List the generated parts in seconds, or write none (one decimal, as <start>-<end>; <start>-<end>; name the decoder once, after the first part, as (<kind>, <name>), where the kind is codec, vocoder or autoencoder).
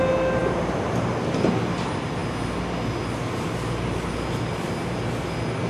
none